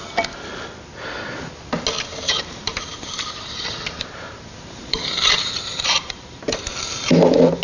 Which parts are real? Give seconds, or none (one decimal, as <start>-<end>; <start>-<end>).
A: 0.0-2.1; 6.6-7.6

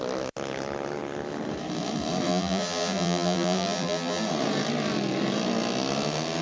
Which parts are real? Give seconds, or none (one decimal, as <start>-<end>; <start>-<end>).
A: 0.0-2.3; 4.2-6.4

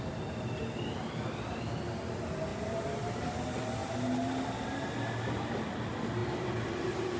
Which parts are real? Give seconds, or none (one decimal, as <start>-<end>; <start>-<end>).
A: 0.0-6.2

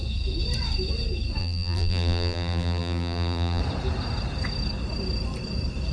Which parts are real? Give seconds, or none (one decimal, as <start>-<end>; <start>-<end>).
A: 0.0-1.4; 3.6-5.9

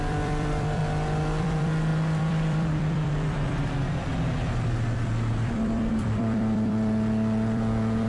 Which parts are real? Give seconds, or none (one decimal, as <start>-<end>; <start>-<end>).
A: 0.8-1.4

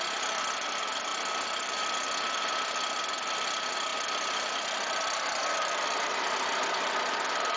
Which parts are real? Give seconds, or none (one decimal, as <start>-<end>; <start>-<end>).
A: 0.0-3.9; 6.0-7.6

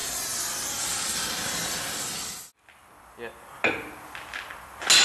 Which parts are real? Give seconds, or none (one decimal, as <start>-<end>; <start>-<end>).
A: 0.0-5.0

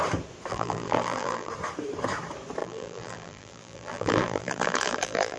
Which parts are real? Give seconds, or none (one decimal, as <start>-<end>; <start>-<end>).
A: 0.0-0.5; 1.5-2.6